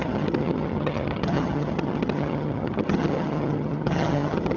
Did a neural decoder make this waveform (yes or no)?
yes